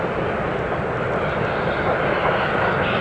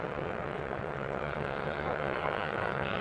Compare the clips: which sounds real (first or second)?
first